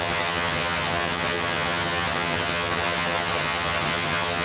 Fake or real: fake